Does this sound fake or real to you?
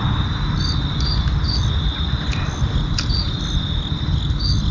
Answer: real